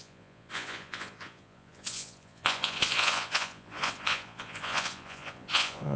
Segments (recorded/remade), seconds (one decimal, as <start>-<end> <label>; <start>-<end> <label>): 0.0-6.0 remade

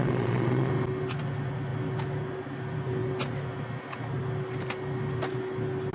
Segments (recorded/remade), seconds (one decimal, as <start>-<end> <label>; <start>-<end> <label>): 0.0-0.7 remade; 0.7-5.9 recorded

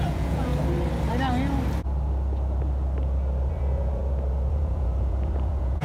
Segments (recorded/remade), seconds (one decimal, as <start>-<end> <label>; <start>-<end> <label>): 0.0-0.5 remade; 0.5-3.5 recorded; 3.5-4.0 remade; 4.0-4.5 recorded; 4.5-5.8 remade

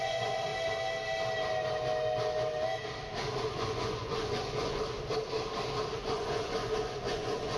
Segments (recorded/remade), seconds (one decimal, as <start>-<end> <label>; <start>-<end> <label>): 0.0-0.5 remade; 0.5-3.4 recorded; 3.4-4.8 remade; 4.8-5.9 recorded; 5.9-7.6 remade

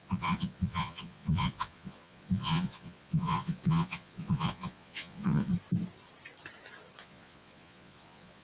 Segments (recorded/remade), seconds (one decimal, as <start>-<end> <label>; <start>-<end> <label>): 0.0-5.5 remade; 5.5-7.0 recorded; 7.0-8.4 remade